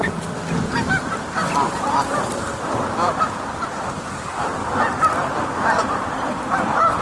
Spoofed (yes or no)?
yes